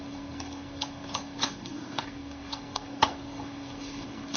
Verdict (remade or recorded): remade